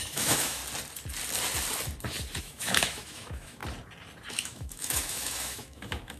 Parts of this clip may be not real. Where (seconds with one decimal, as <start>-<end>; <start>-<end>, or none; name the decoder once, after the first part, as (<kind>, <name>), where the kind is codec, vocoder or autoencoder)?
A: 0.0-0.6 (autoencoder, DAC-VAE); 2.4-3.6; 4.3-6.2